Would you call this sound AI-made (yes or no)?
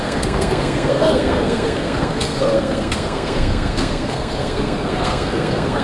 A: yes